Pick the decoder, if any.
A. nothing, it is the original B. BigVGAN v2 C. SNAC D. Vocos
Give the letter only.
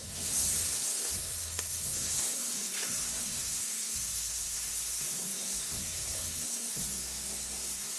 C